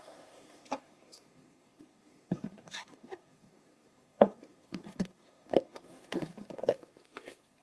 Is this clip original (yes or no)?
no